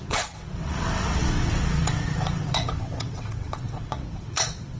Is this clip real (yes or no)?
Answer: no